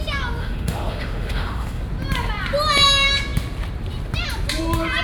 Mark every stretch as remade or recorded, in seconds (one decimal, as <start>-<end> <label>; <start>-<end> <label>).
0.0-0.4 recorded; 0.4-1.8 remade; 1.8-5.0 recorded